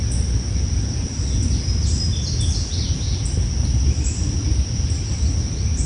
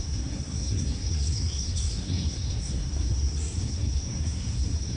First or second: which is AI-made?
second